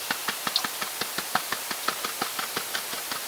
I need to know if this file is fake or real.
real